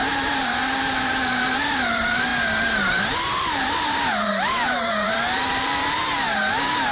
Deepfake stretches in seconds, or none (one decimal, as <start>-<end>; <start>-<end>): 0.0-6.9